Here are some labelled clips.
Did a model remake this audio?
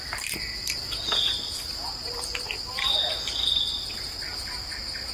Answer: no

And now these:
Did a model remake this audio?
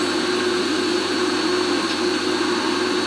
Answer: no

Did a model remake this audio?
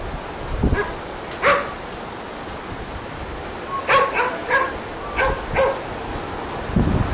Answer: no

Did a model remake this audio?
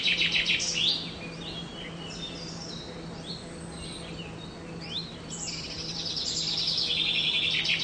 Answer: no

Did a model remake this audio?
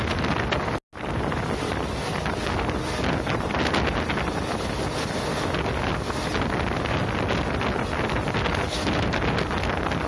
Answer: no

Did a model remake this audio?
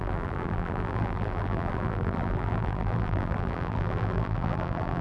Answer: yes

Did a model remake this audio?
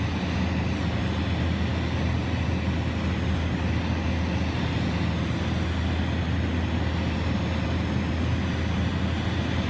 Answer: no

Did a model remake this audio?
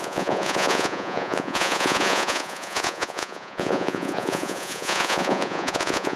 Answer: yes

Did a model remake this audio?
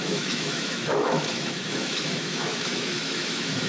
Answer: yes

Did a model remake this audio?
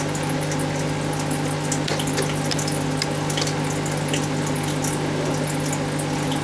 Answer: no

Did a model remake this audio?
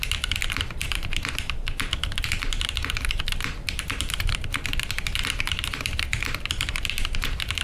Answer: yes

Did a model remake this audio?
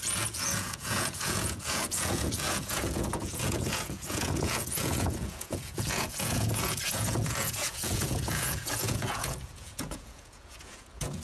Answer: yes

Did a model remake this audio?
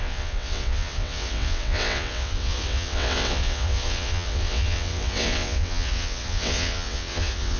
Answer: yes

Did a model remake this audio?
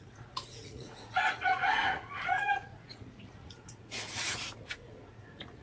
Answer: yes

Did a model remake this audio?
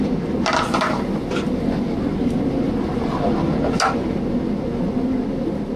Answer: no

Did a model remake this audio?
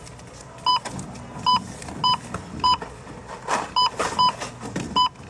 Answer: no